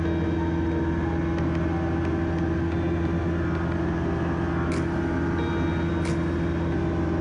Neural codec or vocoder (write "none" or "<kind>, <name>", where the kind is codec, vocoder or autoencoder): none